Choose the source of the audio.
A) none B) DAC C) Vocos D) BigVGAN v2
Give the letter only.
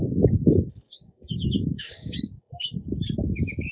B